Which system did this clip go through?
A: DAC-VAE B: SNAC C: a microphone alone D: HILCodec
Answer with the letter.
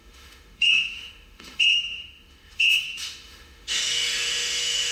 A